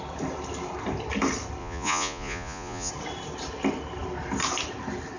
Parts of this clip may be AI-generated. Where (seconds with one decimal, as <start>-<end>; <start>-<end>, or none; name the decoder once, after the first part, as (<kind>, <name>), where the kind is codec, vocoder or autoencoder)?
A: 1.6-2.9 (vocoder, Vocos)